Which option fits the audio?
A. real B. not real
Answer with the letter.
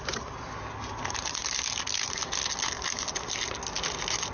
A